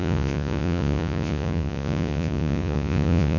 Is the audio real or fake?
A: fake